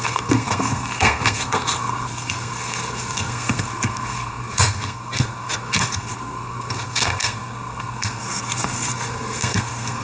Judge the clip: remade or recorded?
remade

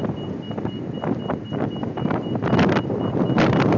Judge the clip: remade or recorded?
recorded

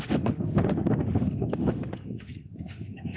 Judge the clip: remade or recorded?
remade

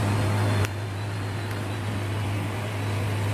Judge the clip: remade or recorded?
recorded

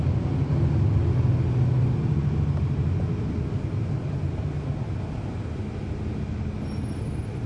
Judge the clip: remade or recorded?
recorded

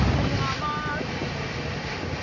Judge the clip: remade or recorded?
recorded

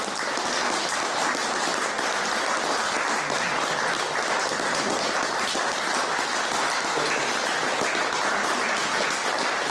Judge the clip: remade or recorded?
recorded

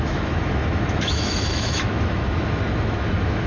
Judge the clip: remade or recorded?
remade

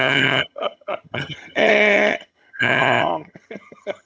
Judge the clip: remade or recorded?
remade